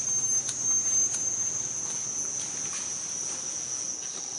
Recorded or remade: recorded